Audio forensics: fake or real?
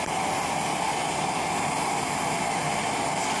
real